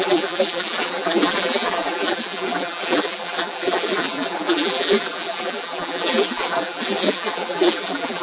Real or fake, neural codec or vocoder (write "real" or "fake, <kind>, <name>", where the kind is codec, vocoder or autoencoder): fake, vocoder, BigVGAN v2